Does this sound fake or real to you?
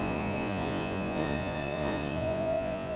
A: fake